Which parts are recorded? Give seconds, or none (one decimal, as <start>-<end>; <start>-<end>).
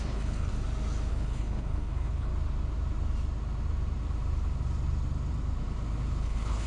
0.5-1.1; 2.3-6.2